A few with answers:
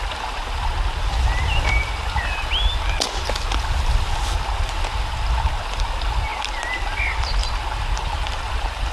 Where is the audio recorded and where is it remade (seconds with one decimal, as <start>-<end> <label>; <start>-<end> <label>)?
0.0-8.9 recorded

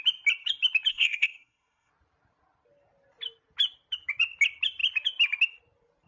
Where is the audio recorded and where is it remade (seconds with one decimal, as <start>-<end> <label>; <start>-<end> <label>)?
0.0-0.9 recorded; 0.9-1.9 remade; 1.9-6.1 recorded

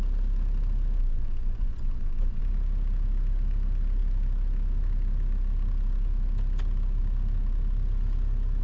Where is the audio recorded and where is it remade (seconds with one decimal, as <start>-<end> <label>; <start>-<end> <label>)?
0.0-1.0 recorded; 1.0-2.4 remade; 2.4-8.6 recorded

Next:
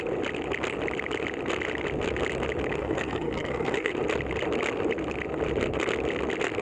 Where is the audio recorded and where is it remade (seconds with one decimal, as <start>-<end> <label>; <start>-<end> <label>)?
0.0-2.8 recorded; 2.8-3.9 remade; 3.9-6.6 recorded